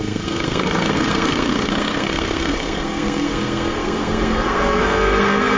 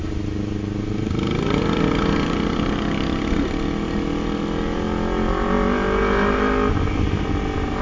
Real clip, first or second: second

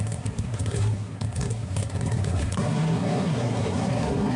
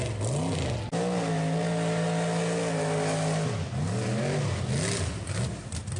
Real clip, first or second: second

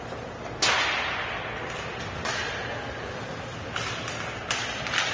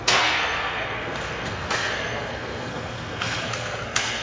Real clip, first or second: first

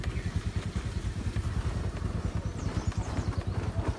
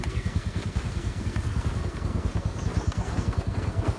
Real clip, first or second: first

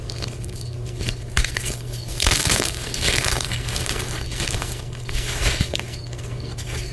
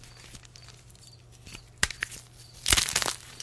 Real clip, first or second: second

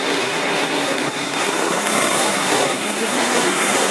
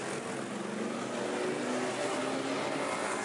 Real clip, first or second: second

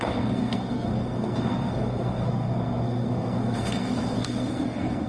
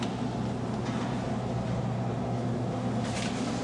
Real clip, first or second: second